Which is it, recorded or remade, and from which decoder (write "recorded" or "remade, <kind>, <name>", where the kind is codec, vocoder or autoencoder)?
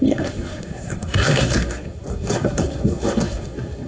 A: remade, codec, SNAC